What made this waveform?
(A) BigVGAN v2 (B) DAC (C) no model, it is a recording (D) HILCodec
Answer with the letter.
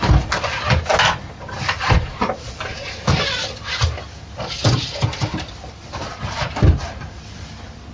C